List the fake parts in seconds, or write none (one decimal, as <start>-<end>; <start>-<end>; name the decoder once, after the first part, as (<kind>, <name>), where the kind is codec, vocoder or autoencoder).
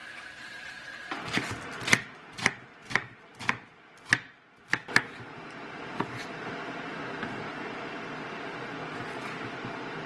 none